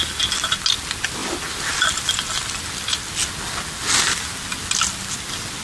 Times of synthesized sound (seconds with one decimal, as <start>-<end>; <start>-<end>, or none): none